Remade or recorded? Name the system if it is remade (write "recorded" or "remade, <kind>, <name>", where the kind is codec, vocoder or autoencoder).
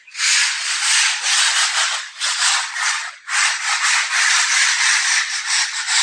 recorded